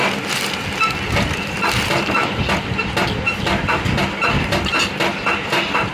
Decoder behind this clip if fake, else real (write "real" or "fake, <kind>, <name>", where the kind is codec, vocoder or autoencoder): real